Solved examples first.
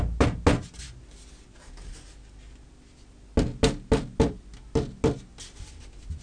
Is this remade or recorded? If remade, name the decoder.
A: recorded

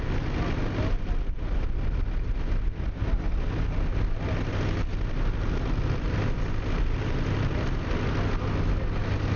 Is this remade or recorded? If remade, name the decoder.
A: recorded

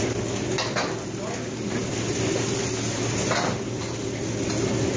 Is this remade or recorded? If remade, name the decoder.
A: recorded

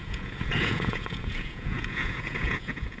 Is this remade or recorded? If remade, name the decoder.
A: remade, vocoder, Vocos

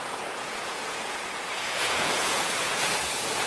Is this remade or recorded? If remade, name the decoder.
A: remade, vocoder, Vocos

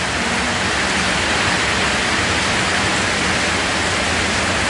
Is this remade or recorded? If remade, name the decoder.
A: recorded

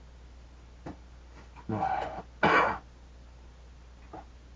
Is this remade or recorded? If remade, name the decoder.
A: recorded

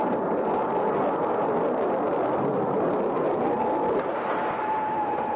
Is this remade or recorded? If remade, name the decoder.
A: recorded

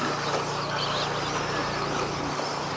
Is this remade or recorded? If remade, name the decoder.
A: recorded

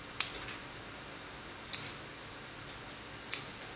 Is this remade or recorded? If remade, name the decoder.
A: recorded